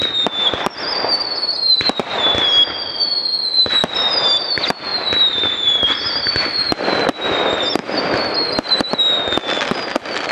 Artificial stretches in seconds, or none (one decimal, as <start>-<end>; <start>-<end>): none